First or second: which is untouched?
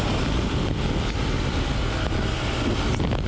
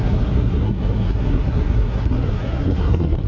first